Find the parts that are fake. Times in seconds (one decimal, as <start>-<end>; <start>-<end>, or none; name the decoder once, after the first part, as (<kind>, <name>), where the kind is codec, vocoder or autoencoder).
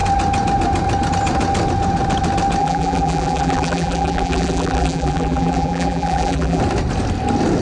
2.6-6.6 (vocoder, BigVGAN v2)